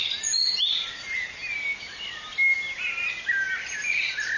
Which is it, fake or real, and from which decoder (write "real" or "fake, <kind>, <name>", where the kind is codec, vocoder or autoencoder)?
real